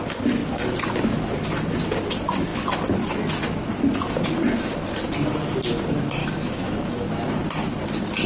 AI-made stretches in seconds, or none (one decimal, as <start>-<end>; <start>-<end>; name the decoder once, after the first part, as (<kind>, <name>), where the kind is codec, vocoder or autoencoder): 6.2-7.1 (autoencoder, DAC-VAE)